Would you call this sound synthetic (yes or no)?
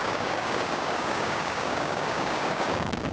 yes